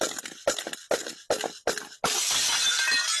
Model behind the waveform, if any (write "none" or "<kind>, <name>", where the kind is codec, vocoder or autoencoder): none